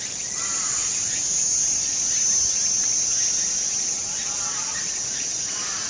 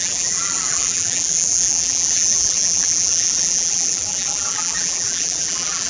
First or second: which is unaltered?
first